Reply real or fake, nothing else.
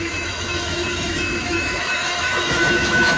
fake